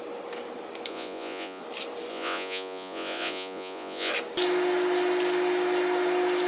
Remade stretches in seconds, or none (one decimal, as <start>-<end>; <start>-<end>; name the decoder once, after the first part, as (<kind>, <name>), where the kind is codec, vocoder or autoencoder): 0.9-1.6 (vocoder, Vocos); 2.1-4.1